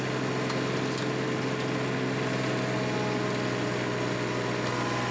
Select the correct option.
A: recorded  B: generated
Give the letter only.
A